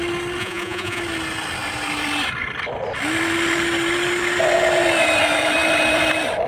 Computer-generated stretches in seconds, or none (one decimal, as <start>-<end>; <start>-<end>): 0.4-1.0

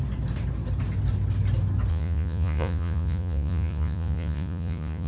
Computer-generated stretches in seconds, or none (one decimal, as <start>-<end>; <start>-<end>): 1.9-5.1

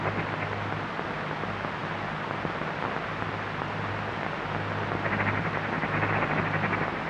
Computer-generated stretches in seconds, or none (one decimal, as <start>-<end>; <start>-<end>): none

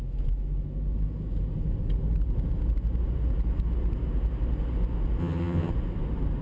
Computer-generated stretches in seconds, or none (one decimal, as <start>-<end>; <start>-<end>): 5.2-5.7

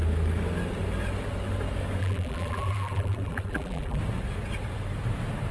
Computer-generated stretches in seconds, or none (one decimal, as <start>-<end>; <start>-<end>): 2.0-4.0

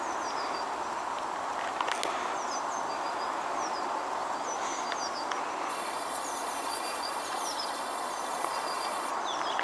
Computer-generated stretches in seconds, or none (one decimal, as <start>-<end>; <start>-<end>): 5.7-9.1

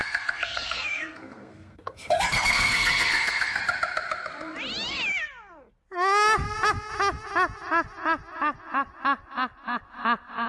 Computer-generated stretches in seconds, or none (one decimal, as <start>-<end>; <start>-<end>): 0.0-3.6

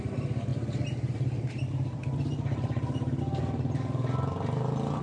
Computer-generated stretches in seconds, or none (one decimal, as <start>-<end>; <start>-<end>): 0.5-3.2